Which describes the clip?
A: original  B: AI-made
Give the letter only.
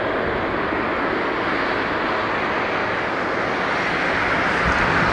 A